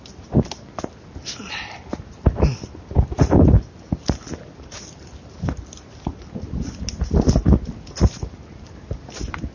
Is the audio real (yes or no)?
yes